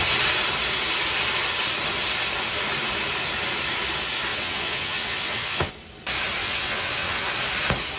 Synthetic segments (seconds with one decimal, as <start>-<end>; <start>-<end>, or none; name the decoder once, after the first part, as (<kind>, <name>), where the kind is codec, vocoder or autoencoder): 4.3-5.7 (vocoder, WaveNeXt); 6.4-7.3